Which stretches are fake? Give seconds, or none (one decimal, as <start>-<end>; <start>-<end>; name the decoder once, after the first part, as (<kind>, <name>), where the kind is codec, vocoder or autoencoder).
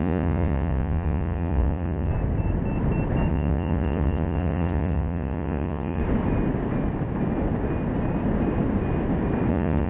0.0-2.1 (vocoder, Vocos); 3.3-6.0; 9.5-9.9